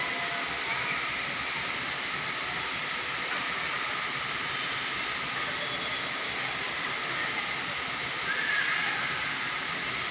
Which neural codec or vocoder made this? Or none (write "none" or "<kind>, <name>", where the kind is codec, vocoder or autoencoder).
none